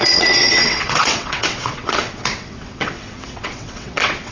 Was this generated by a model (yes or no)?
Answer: yes